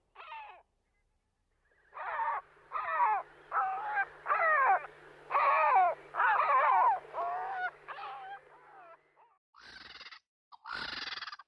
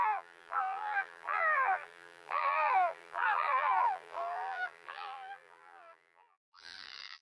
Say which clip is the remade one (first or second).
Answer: second